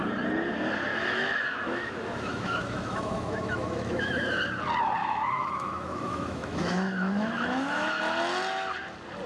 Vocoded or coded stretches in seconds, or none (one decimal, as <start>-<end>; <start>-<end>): 0.9-4.4; 5.0-8.0

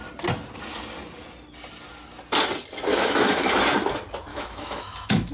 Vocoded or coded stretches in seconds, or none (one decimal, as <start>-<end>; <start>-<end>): 2.9-3.6; 4.3-5.3